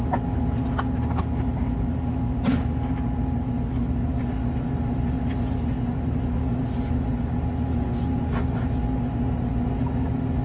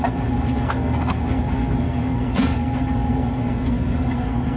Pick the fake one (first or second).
second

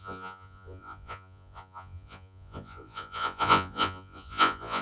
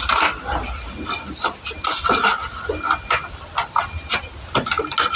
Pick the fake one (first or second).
first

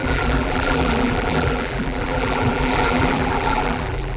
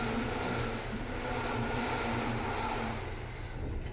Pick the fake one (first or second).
first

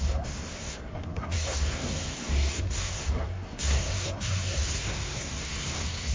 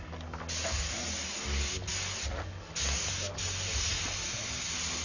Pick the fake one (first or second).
first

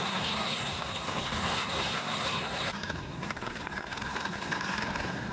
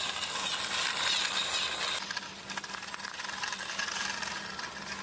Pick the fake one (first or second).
first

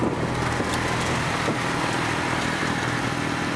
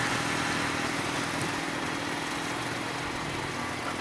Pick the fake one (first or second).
first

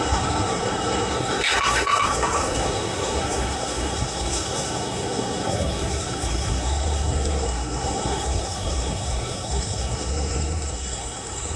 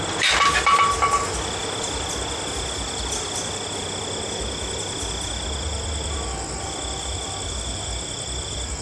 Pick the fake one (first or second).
first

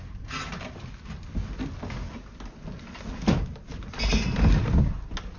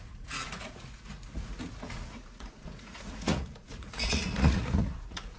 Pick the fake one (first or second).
second